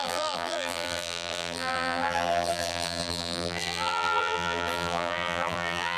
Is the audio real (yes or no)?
no